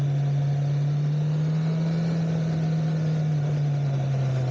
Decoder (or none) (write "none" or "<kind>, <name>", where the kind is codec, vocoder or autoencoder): none